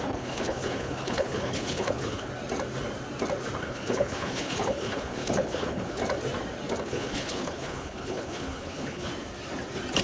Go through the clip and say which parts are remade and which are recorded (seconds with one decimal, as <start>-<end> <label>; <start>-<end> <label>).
0.0-2.3 remade; 2.3-3.6 recorded; 3.6-6.0 remade; 6.0-6.8 recorded; 6.8-9.1 remade; 9.1-10.0 recorded